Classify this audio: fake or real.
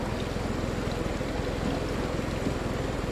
real